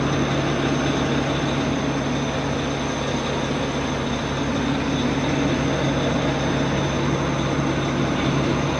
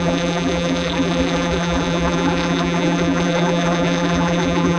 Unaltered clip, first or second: first